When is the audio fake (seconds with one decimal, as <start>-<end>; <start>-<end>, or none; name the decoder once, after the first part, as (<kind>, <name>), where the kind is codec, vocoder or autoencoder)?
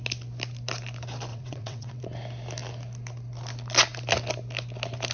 1.3-2.0 (vocoder, WaveNeXt)